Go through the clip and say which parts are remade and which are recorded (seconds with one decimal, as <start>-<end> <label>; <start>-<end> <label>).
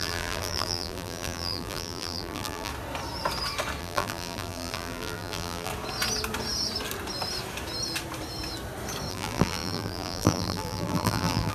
0.0-2.7 remade; 2.7-3.8 recorded; 3.8-5.7 remade; 5.7-9.1 recorded; 9.1-11.5 remade